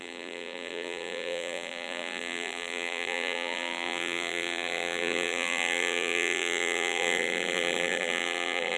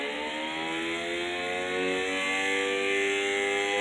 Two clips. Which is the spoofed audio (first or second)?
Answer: first